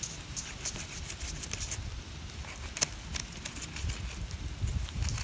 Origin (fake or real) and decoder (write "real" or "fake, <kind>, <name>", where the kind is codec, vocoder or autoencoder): real